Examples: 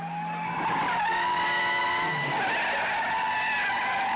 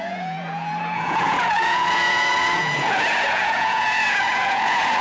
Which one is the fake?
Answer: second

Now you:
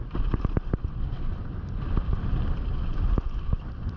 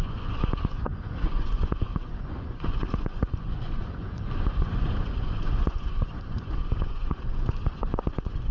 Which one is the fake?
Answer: second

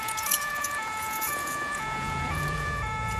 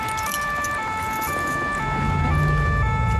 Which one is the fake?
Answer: first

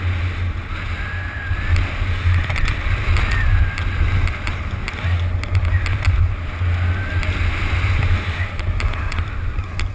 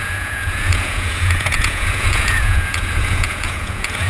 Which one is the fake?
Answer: second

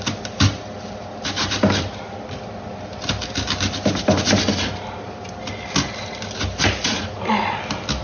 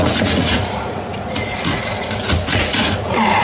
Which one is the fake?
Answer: second